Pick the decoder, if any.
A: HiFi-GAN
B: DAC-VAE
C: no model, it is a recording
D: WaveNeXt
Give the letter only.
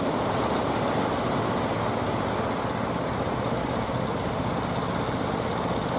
C